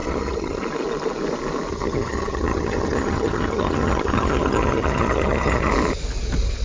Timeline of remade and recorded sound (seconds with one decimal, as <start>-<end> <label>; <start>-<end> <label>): 0.0-0.6 remade; 0.6-1.7 recorded; 1.7-5.7 remade; 5.7-6.6 recorded